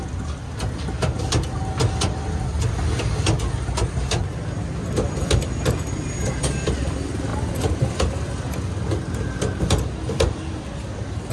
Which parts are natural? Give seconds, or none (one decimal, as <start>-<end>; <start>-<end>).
0.0-11.3